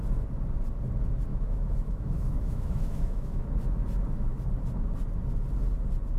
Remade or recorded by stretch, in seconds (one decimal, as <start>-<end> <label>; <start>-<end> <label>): 0.0-1.3 recorded; 1.3-3.4 remade; 3.4-6.2 recorded